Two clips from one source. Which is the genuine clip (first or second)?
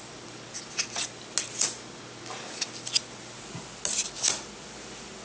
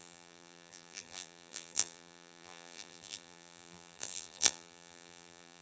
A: first